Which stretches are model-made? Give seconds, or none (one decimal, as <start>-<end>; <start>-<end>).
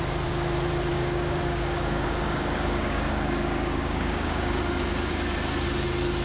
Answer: 0.9-4.6